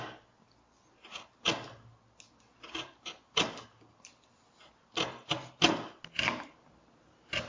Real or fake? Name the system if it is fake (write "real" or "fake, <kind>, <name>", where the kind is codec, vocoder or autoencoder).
real